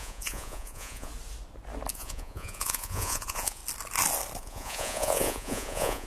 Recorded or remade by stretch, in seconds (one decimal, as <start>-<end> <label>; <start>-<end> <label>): 0.0-1.1 remade; 1.1-1.9 recorded; 1.9-3.6 remade; 3.6-4.4 recorded; 4.4-6.1 remade